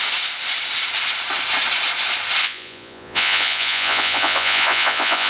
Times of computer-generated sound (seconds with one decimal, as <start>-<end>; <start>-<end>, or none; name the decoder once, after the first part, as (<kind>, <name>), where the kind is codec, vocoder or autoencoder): 2.4-5.3 (vocoder, Vocos)